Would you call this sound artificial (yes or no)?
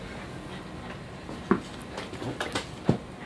no